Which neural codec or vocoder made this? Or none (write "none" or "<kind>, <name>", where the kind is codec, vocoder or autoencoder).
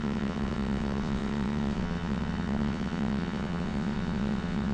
vocoder, WaveNeXt